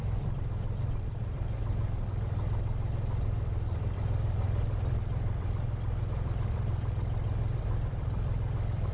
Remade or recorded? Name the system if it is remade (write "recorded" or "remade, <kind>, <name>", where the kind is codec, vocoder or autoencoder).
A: remade, vocoder, BigVGAN v2